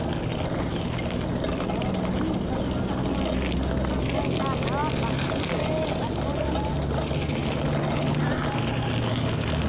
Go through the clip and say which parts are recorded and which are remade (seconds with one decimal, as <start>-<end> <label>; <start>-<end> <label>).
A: 0.0-9.7 recorded